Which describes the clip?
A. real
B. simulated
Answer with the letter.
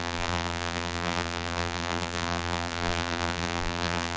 B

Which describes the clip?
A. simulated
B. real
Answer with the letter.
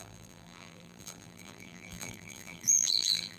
A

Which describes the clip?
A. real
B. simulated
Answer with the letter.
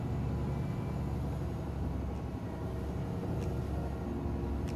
A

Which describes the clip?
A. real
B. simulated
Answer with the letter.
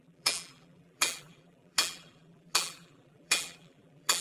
B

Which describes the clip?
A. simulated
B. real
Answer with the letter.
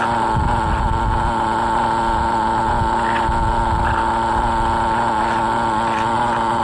B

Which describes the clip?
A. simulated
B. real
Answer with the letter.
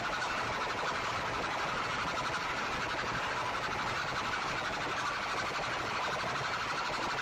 B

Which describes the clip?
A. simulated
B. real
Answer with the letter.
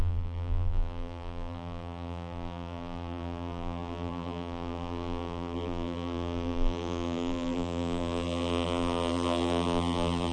A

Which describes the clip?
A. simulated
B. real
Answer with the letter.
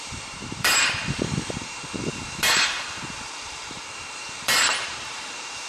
A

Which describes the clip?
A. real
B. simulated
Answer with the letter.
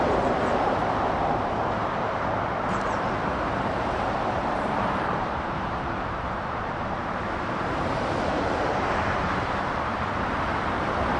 B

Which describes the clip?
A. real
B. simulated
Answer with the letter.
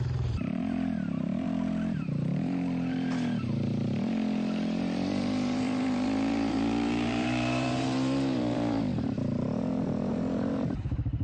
B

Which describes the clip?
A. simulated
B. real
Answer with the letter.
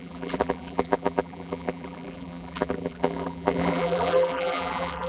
A